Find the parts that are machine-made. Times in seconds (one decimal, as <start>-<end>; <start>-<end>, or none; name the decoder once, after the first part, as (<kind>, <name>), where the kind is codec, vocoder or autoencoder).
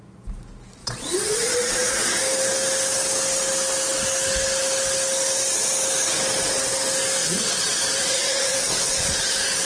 0.8-2.2 (vocoder, Vocos); 7.2-9.2